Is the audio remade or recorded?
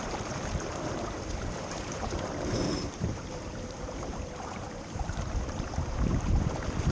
remade